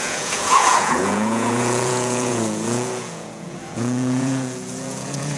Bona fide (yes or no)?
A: no